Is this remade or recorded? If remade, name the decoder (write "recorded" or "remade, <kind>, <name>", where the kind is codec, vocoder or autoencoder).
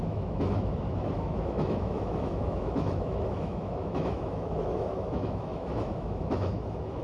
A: remade, autoencoder, DAC-VAE